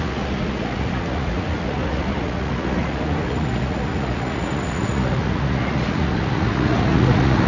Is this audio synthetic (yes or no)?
yes